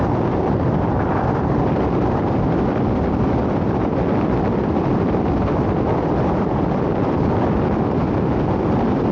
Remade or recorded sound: recorded